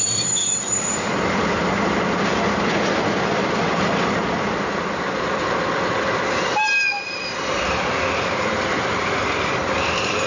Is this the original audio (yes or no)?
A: no